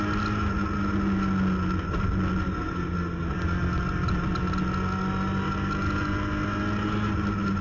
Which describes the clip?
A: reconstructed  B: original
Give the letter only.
B